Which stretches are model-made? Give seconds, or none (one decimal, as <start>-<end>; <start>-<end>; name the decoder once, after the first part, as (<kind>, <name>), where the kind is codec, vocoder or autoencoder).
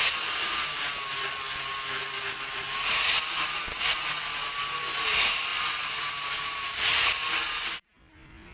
none